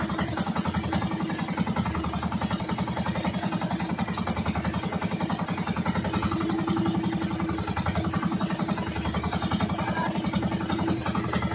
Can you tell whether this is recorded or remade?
recorded